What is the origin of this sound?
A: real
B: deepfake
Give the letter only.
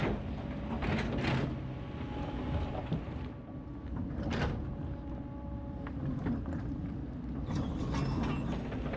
A